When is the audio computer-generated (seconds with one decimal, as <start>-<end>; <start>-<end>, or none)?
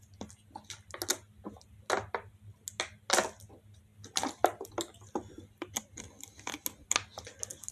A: none